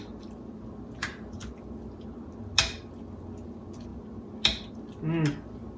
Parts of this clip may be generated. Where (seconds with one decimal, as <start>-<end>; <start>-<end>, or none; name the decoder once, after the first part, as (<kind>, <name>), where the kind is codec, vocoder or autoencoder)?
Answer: 1.0-1.5 (vocoder, BigVGAN v2)